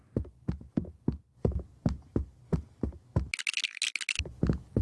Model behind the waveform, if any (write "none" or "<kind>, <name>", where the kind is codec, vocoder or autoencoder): none